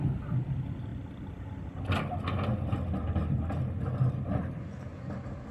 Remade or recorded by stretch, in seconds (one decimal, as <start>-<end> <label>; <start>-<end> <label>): 0.0-5.5 recorded